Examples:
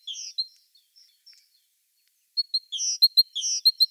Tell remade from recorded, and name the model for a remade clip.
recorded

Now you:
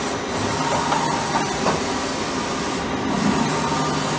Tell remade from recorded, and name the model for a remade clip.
recorded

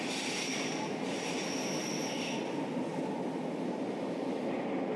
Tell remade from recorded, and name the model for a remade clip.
recorded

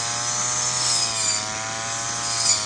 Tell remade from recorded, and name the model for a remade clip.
recorded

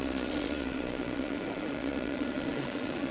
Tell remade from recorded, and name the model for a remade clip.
remade, vocoder, Vocos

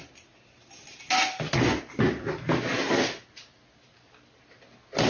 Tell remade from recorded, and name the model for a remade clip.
recorded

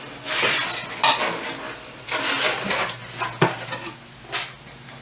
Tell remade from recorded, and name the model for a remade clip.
recorded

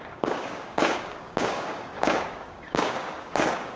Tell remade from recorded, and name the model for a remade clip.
remade, codec, DAC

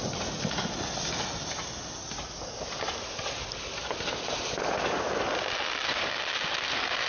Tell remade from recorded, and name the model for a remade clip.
recorded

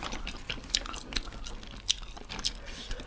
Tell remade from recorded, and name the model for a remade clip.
recorded